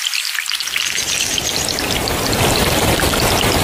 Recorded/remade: recorded